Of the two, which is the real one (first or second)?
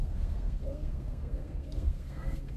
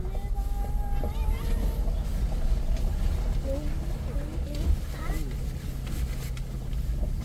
second